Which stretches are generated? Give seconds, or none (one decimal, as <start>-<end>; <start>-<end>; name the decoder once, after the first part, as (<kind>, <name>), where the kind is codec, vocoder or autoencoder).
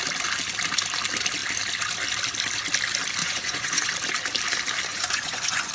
3.2-3.9 (vocoder, Vocos); 4.9-5.7